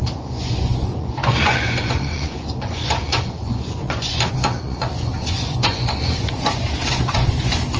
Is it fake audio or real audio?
fake